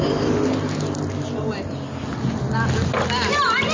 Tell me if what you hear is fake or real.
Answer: real